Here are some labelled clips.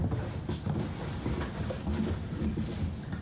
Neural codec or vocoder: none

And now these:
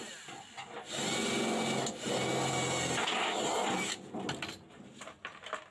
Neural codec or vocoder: none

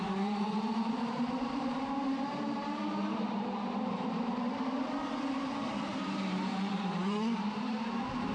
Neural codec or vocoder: vocoder, BigVGAN v2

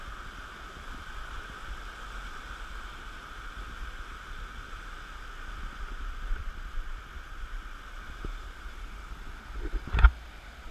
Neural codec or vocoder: none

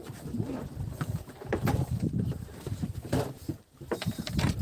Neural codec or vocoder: vocoder, BigVGAN v2